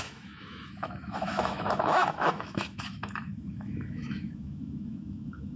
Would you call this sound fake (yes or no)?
yes